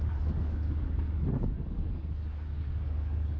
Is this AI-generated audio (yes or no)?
yes